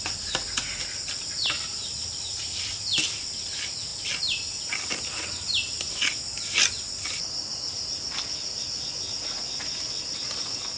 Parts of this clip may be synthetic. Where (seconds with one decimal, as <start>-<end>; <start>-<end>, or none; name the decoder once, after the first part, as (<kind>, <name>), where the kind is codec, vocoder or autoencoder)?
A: none